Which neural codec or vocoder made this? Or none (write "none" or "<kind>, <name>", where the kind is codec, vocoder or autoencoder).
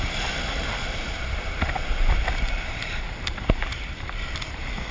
none